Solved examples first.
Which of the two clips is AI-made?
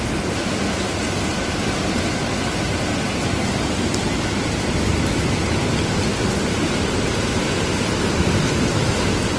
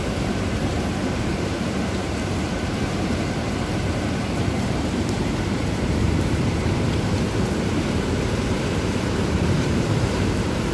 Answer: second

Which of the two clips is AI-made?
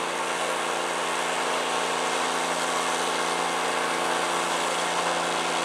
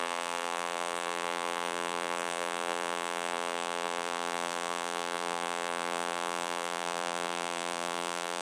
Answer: second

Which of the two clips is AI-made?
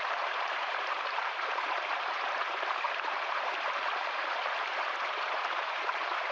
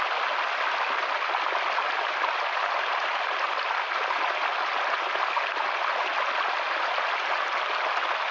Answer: first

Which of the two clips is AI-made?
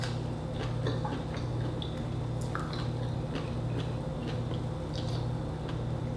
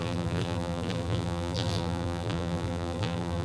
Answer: second